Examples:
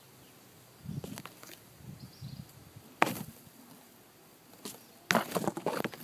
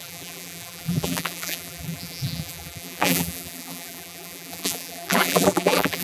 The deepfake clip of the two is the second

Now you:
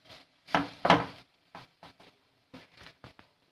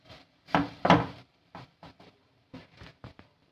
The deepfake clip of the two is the second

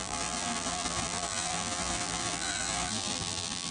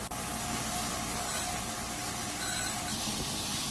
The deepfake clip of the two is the first